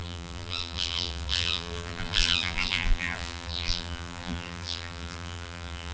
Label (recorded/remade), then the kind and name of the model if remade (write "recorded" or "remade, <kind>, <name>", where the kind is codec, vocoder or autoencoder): remade, vocoder, BigVGAN v2